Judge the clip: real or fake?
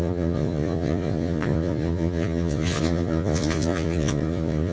fake